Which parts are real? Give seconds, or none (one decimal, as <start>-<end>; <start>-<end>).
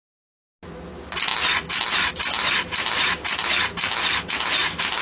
0.0-5.0